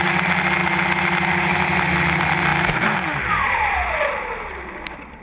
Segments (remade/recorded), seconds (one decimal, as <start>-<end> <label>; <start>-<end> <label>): 0.0-5.2 recorded